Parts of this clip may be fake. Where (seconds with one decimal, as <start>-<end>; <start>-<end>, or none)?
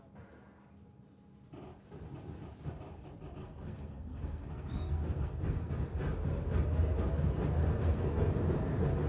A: 3.4-5.7; 7.6-8.3